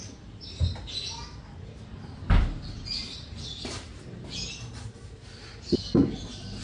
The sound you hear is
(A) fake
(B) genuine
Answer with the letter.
B